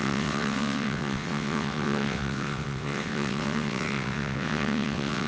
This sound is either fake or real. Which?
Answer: fake